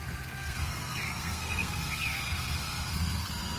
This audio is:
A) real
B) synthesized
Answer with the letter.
B